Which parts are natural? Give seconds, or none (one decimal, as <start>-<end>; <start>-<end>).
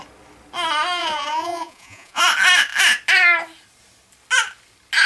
0.0-1.0; 2.2-5.1